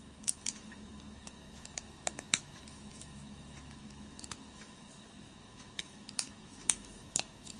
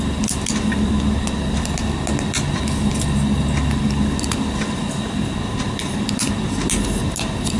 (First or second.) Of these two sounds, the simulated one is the first